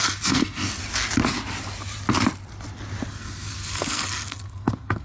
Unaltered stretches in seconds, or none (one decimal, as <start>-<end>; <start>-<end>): 0.8-3.1